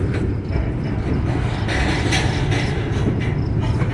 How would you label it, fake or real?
real